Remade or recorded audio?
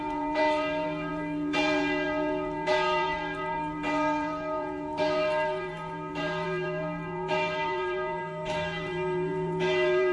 remade